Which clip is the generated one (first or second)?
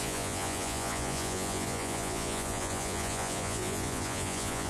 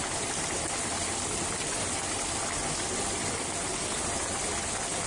first